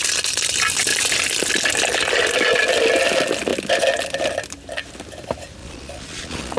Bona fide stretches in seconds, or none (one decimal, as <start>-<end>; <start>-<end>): 0.0-5.6